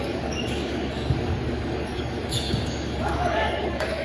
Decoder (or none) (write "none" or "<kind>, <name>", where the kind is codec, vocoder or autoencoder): codec, DAC